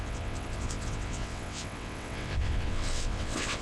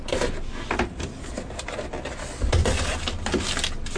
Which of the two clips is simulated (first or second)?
first